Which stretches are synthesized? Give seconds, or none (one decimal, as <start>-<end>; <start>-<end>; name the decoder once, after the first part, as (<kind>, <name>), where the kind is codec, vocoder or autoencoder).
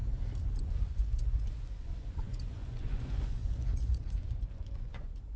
0.6-5.4 (vocoder, Vocos)